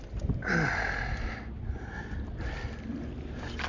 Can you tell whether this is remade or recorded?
recorded